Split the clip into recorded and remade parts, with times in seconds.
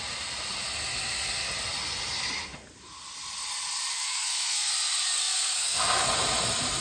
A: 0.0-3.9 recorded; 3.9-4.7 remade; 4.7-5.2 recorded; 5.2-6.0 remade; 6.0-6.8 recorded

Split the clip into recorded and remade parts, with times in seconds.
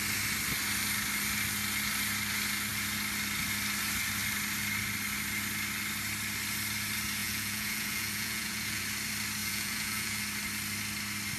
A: 0.0-7.2 recorded; 7.2-8.8 remade; 8.8-9.4 recorded; 9.4-10.2 remade; 10.2-11.4 recorded